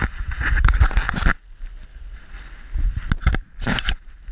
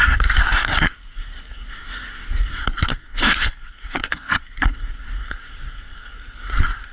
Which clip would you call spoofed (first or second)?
second